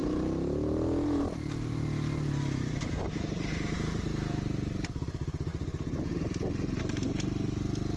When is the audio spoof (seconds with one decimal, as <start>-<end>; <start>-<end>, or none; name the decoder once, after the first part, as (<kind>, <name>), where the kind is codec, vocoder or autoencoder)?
2.8-5.5 (vocoder, BigVGAN v2); 6.8-8.0